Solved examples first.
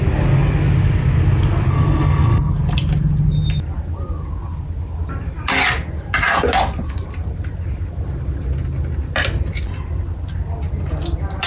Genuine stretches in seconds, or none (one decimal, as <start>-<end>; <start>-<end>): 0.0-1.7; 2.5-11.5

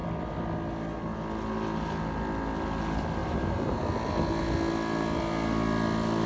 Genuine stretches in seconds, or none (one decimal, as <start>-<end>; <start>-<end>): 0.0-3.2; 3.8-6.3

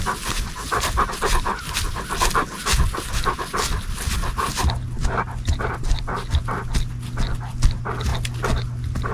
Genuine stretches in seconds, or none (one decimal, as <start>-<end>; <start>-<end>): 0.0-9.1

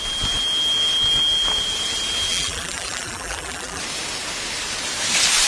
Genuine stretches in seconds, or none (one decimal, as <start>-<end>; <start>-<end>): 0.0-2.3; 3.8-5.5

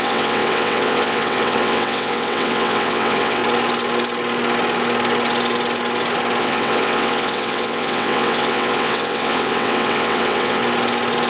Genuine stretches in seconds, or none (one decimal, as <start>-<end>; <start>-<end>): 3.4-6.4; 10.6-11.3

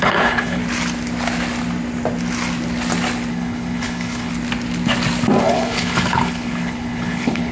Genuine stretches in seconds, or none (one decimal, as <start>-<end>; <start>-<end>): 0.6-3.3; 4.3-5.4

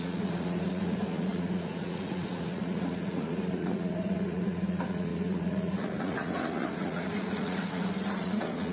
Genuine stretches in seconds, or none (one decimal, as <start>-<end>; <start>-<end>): none